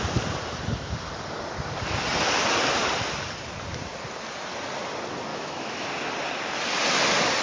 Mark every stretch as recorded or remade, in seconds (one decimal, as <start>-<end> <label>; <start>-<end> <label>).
0.0-5.3 recorded; 5.3-5.9 remade; 5.9-7.4 recorded